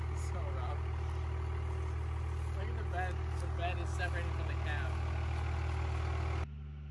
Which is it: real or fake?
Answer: real